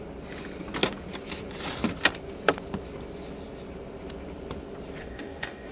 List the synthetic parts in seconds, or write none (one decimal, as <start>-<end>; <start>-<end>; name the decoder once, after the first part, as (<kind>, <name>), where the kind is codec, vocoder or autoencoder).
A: 5.0-5.7 (codec, DAC)